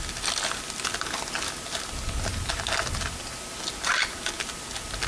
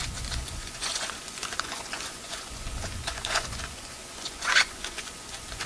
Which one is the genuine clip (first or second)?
first